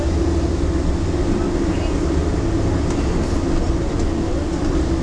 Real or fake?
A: real